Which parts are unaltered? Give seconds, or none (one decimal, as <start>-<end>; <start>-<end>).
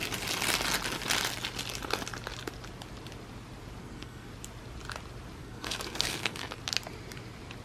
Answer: 0.0-3.8; 4.3-5.4; 6.6-7.6